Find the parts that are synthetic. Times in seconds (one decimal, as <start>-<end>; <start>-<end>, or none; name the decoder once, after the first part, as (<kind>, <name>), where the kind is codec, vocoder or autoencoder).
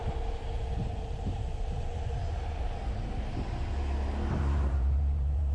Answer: 0.8-1.9 (vocoder, BigVGAN v2); 2.8-3.6; 4.4-5.5